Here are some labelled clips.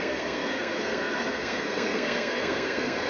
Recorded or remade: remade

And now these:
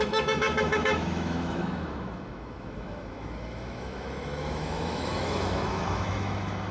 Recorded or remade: remade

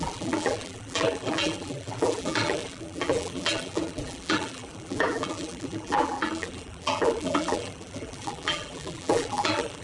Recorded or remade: remade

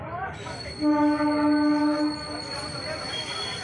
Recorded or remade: recorded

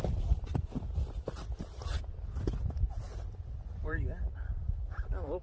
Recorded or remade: remade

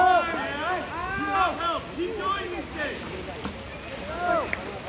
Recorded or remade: recorded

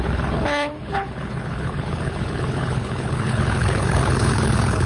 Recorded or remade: remade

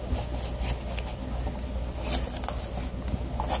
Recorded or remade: recorded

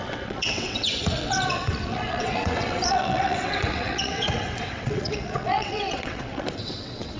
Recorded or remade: remade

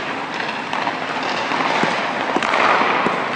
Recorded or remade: recorded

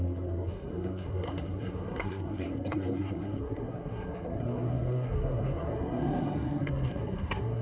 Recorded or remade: remade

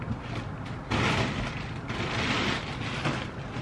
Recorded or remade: recorded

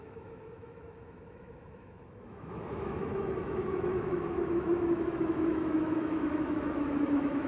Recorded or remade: remade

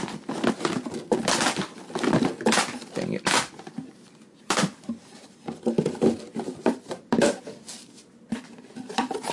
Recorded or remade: recorded